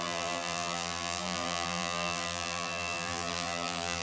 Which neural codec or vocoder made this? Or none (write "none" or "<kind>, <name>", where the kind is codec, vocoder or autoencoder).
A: vocoder, BigVGAN v2